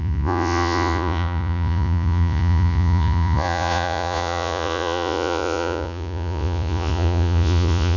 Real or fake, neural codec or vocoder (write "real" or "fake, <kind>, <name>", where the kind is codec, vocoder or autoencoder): fake, vocoder, Vocos